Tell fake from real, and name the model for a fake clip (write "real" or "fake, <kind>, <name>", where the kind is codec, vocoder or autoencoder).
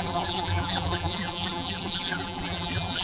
fake, vocoder, BigVGAN v2